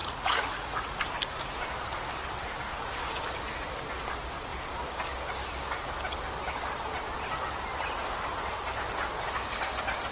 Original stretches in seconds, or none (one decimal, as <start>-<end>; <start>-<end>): 1.0-10.1